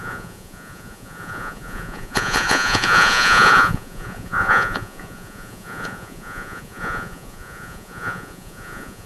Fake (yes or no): yes